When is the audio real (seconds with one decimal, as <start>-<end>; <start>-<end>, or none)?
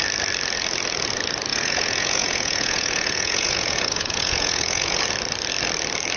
0.0-1.5; 5.0-6.2